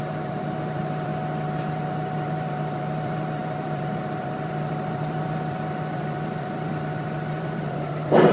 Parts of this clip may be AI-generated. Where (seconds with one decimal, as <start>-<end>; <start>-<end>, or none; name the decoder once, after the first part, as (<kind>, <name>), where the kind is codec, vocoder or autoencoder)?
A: 0.0-1.1 (vocoder, BigVGAN v2); 1.7-8.3